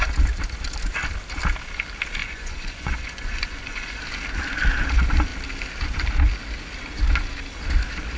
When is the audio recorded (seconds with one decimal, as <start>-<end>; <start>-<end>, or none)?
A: 0.0-2.2; 4.0-8.2